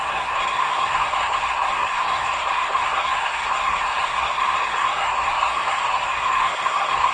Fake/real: fake